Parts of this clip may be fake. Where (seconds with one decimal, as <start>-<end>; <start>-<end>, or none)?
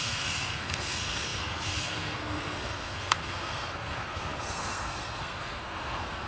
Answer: 0.0-6.3